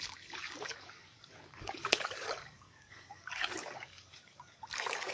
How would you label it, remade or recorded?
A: remade